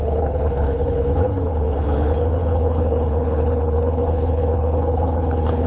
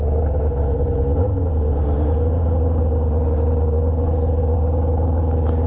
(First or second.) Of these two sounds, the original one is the second